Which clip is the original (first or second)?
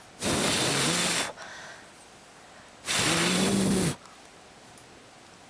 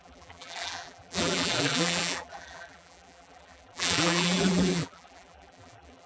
first